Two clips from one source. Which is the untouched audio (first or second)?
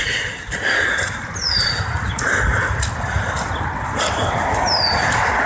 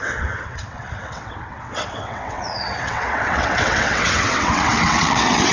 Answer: first